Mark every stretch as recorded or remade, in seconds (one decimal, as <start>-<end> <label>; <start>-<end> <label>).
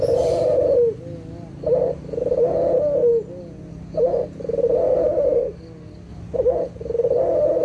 0.0-7.6 recorded